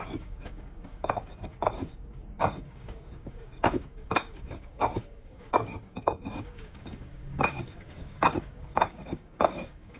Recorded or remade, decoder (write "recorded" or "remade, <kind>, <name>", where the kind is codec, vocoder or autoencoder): remade, codec, DAC